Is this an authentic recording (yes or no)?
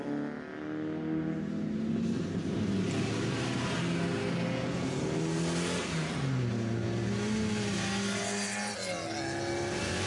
yes